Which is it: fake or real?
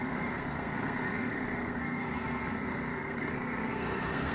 fake